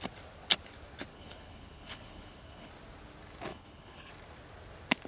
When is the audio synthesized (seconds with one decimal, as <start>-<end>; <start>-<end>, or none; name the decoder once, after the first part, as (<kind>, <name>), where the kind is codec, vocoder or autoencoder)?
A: 1.1-2.7 (codec, HILCodec); 3.5-4.1